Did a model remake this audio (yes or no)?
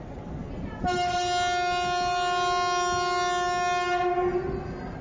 no